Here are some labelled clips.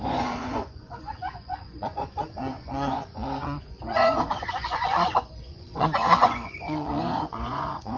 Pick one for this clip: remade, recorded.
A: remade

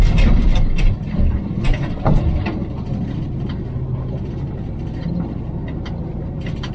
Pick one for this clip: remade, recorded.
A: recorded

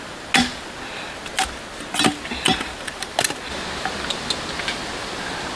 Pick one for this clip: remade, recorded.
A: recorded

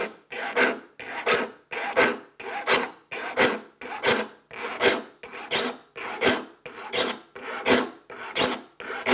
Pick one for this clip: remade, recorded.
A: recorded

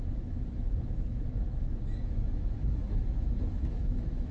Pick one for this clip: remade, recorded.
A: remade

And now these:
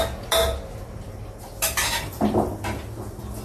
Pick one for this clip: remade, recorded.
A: recorded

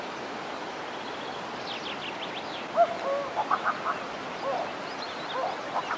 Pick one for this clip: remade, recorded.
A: recorded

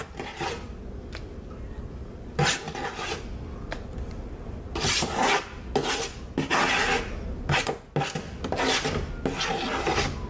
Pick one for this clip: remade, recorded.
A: recorded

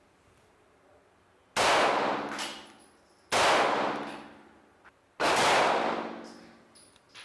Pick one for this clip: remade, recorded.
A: recorded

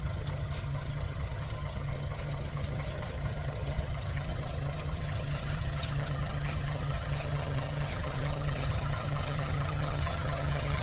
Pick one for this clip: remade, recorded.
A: remade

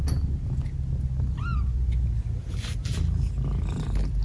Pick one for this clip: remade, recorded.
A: recorded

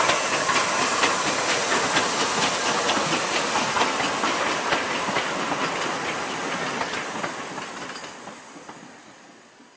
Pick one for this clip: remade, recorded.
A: remade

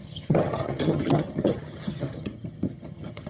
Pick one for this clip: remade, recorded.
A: remade